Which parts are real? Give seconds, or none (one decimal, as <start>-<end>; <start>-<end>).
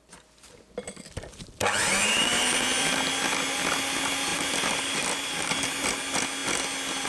0.0-1.8; 3.0-4.3; 5.7-7.1